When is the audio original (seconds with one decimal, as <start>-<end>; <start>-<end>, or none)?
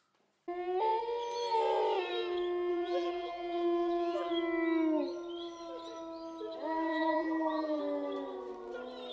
0.0-2.7; 4.3-6.9; 7.8-9.1